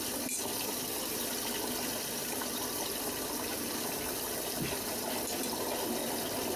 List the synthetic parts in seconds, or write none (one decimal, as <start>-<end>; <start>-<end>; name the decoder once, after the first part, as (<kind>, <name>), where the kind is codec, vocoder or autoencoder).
2.2-3.1 (vocoder, BigVGAN v2)